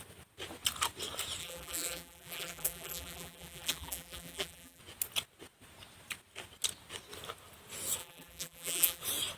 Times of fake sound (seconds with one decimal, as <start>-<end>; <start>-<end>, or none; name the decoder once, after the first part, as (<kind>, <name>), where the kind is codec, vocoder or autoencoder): 1.4-4.8 (vocoder, BigVGAN v2); 8.0-9.0